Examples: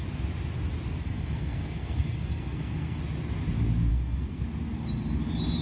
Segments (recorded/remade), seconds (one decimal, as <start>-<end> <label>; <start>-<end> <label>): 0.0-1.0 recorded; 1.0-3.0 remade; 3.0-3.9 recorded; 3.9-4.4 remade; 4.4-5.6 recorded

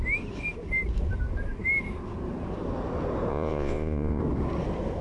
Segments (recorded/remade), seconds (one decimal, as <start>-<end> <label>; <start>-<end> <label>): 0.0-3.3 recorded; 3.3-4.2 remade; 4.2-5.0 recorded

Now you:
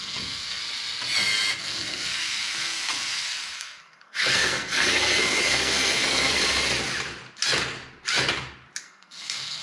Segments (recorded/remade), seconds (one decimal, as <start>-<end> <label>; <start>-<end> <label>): 0.0-0.6 remade; 0.6-1.6 recorded; 1.6-6.4 remade; 6.4-8.8 recorded; 8.8-9.6 remade